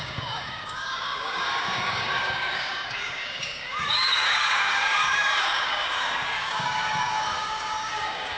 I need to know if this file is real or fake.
fake